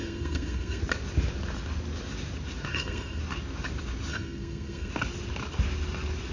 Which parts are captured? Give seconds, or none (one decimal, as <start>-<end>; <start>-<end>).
0.8-2.7; 3.2-4.1; 4.9-6.3